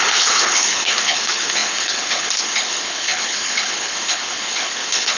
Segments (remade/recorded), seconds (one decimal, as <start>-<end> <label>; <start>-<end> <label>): 0.0-5.2 remade